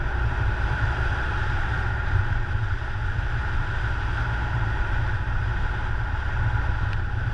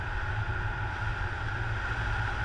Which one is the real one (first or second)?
second